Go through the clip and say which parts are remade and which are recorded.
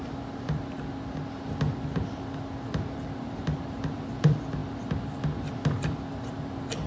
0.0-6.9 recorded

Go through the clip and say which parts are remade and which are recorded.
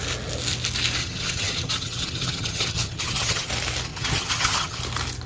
0.0-1.0 recorded; 1.0-3.5 remade; 3.5-3.9 recorded; 3.9-4.8 remade; 4.8-5.3 recorded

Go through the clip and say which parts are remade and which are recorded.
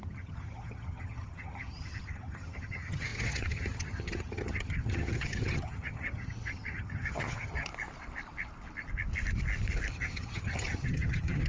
0.0-7.7 remade; 7.7-9.9 recorded; 9.9-11.5 remade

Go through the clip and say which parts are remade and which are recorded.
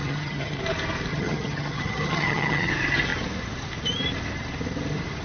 0.0-0.6 remade; 0.6-1.1 recorded; 1.1-2.7 remade; 2.7-5.2 recorded